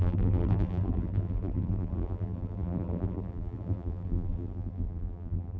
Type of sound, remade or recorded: remade